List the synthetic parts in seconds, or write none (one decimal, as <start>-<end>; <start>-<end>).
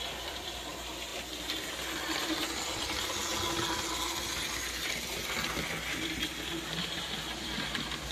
0.0-1.1; 1.8-3.3; 6.8-8.1